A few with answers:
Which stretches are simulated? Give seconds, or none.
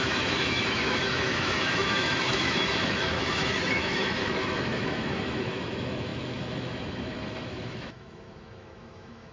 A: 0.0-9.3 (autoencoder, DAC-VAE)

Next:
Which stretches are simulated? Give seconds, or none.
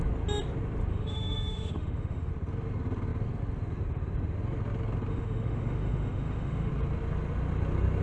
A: 0.9-2.3 (autoencoder, DAC-VAE); 5.1-6.7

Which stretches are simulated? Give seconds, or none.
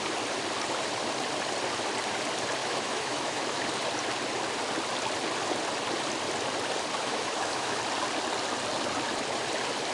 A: 2.6-3.6 (autoencoder, DAC-VAE); 7.0-7.8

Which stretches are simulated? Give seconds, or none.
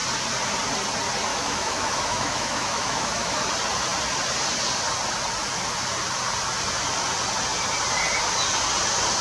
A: 1.3-3.5 (autoencoder, DAC-VAE)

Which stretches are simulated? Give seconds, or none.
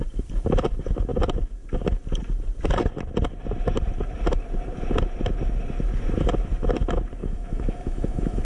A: 7.2-8.4 (autoencoder, DAC-VAE)